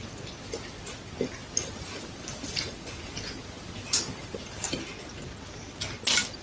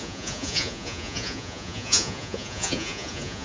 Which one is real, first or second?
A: first